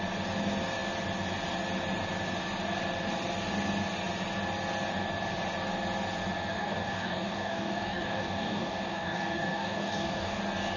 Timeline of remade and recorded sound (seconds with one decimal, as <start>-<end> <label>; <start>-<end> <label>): 0.0-6.5 recorded; 6.5-10.4 remade; 10.4-10.8 recorded